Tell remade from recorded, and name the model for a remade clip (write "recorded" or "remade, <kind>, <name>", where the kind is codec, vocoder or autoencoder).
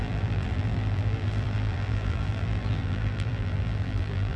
remade, vocoder, BigVGAN v2